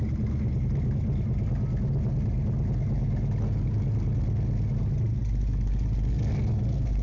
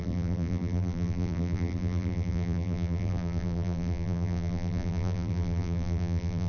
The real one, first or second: first